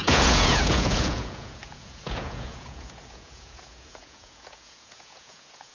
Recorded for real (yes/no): no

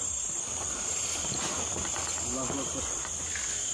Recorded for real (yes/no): yes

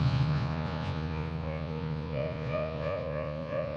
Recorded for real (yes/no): no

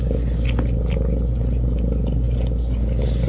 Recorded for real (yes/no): yes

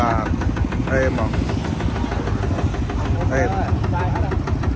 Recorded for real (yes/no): yes